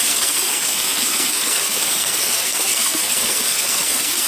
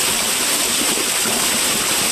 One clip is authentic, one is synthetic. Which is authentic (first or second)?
second